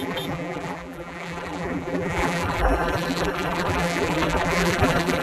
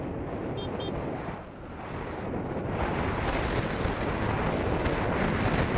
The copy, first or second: first